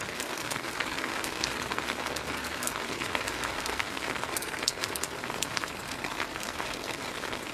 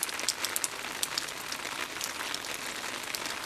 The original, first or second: second